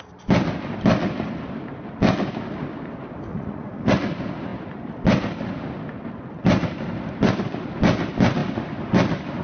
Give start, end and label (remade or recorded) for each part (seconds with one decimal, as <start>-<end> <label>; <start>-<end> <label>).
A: 0.0-3.3 recorded; 3.3-3.9 remade; 3.9-9.4 recorded